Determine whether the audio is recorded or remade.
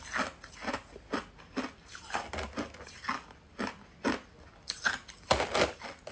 recorded